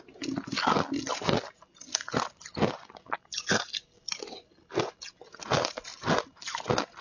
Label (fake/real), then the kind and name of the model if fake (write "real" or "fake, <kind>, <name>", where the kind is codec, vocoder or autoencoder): real